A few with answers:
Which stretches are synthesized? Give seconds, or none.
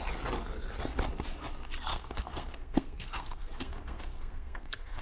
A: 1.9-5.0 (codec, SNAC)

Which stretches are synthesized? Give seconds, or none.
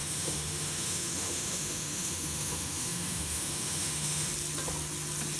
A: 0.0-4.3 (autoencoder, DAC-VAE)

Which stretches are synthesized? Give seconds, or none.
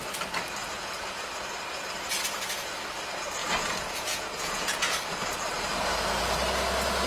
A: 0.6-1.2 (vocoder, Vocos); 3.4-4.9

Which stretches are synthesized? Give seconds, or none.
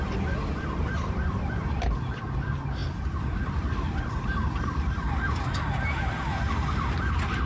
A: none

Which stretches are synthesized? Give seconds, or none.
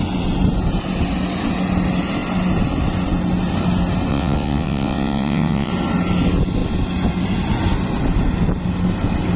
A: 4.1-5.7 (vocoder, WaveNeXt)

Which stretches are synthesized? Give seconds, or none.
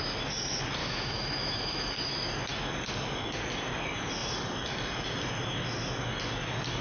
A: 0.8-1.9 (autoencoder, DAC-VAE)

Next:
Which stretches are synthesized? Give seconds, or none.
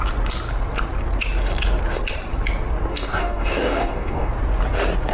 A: 2.9-4.3 (codec, DAC)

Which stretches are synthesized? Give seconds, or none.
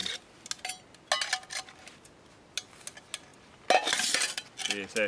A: none